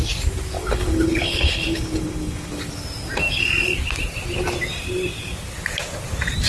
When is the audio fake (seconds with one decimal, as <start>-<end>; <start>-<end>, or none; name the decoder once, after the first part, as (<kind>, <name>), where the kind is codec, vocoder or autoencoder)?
0.6-2.6 (codec, HILCodec)